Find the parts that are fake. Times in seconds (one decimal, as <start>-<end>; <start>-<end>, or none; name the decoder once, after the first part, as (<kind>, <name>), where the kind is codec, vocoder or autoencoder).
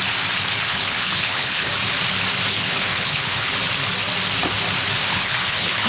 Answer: 0.7-1.7 (codec, HILCodec); 2.5-3.5; 5.1-5.9